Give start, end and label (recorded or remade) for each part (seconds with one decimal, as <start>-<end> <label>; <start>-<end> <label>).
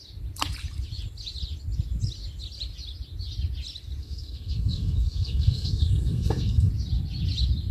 0.0-4.0 recorded; 4.0-6.7 remade; 6.7-7.7 recorded